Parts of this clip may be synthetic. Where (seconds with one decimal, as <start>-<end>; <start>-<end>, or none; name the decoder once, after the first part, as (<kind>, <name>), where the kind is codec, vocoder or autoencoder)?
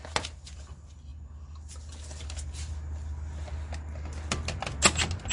none